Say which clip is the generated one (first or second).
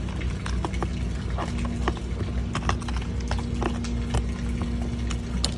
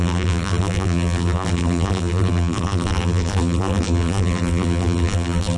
second